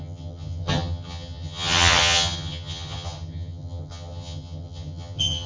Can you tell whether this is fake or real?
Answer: fake